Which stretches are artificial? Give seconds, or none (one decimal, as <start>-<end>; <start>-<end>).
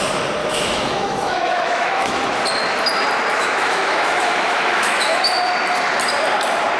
0.4-2.3; 3.3-5.2